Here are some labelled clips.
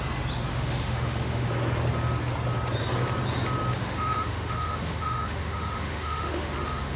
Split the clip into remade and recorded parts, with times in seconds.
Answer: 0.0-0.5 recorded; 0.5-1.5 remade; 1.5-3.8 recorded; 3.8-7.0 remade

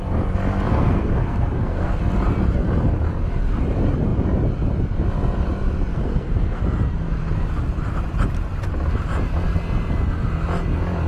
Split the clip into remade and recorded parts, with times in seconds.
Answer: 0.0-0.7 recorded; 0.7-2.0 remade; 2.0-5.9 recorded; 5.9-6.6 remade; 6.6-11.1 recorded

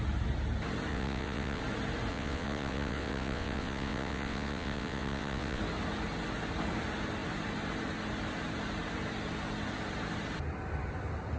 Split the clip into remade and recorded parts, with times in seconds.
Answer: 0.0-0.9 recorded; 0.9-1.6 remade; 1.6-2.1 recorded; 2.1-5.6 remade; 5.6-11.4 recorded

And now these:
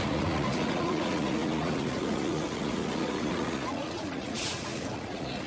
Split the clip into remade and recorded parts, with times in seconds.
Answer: 0.0-5.5 remade

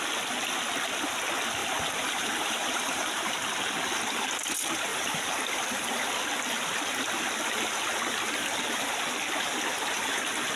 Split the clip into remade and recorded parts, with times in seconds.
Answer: 0.0-1.6 recorded; 1.6-3.3 remade; 3.3-4.9 recorded; 4.9-6.1 remade; 6.1-10.6 recorded